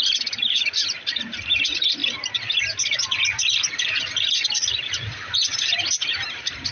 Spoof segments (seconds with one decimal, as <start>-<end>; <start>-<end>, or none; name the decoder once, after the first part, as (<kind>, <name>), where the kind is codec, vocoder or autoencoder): 0.0-2.0 (vocoder, BigVGAN v2); 4.7-6.7